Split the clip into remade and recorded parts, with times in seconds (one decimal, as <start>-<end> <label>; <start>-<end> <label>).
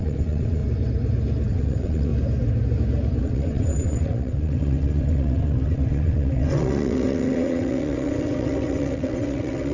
0.0-0.6 remade; 0.6-1.5 recorded; 1.5-2.1 remade; 2.1-3.2 recorded; 3.2-9.7 remade